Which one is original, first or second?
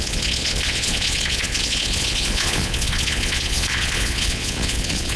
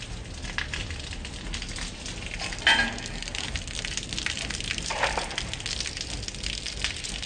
second